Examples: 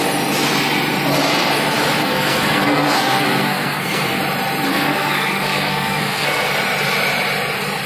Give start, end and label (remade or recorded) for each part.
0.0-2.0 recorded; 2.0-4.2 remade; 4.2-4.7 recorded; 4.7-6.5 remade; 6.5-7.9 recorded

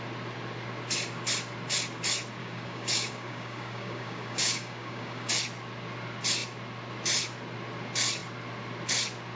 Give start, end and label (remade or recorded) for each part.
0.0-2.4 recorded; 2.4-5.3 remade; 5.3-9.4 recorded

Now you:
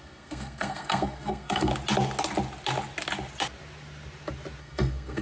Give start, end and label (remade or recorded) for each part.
0.0-1.7 remade; 1.7-4.6 recorded; 4.6-5.2 remade

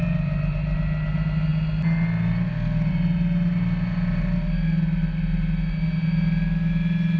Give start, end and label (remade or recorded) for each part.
0.0-7.2 recorded

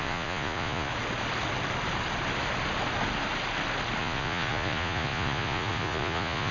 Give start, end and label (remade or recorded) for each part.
0.0-0.9 remade; 0.9-4.0 recorded; 4.0-6.5 remade